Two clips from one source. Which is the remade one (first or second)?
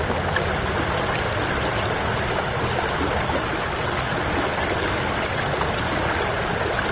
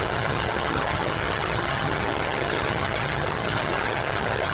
second